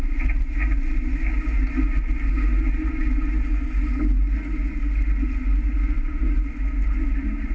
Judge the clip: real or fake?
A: real